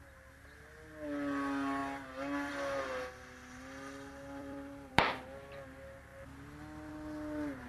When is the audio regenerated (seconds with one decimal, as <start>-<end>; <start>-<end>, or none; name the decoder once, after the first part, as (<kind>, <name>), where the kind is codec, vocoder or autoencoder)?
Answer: 4.4-4.9 (vocoder, BigVGAN v2)